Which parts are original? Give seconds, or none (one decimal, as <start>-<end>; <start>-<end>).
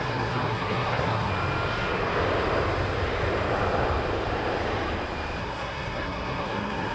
1.3-5.4